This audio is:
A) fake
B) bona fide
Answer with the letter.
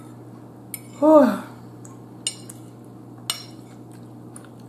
B